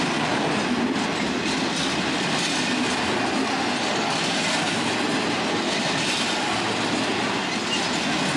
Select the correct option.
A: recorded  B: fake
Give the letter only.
A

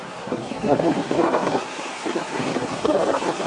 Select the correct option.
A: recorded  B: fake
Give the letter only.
B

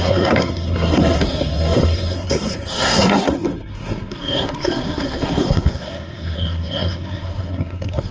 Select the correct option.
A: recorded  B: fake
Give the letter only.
B